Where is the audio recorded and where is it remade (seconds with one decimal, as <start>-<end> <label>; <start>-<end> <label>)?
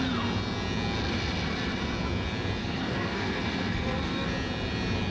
0.0-2.6 recorded; 2.6-4.3 remade; 4.3-5.1 recorded